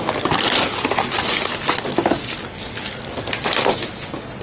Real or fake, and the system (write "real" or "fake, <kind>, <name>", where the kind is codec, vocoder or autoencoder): real